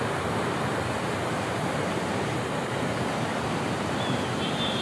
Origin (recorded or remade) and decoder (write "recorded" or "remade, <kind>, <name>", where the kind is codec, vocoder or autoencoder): remade, vocoder, BigVGAN v2